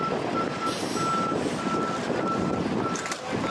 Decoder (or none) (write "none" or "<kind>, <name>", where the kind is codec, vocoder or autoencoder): none